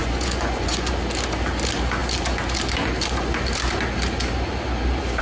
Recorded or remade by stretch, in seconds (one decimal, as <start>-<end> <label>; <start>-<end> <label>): 0.0-0.9 remade; 0.9-5.2 recorded